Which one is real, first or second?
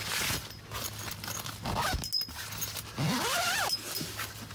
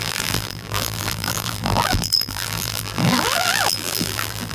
first